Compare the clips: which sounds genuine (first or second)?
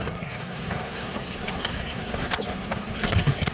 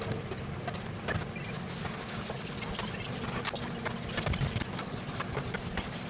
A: second